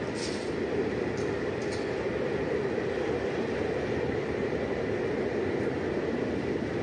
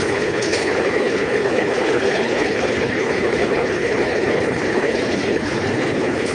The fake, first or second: second